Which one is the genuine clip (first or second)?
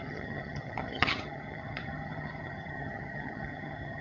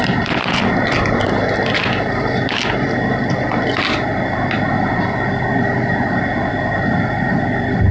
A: second